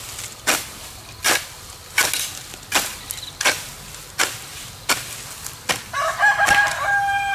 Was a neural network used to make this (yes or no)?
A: no